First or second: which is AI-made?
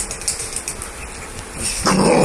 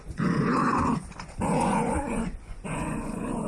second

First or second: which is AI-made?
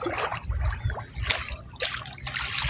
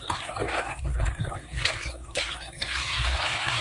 second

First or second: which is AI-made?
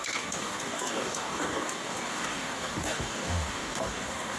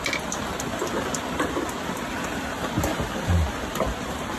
first